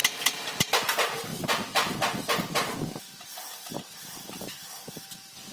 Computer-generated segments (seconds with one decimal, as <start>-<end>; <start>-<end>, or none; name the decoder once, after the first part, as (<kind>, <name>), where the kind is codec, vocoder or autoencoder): 0.0-5.5 (vocoder, BigVGAN v2)